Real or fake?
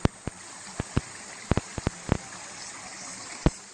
real